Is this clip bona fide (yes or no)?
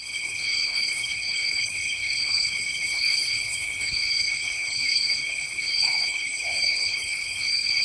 no